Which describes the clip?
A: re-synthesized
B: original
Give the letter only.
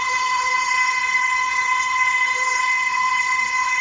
A